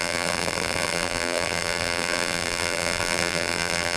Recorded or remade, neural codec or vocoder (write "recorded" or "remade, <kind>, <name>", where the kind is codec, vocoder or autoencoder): remade, vocoder, BigVGAN v2